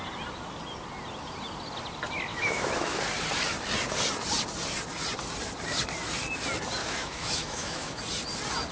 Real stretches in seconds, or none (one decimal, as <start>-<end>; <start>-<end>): 0.0-2.3; 3.0-6.8; 8.0-8.7